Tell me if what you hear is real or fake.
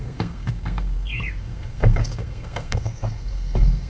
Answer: fake